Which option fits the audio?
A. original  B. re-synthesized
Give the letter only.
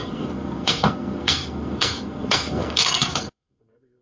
B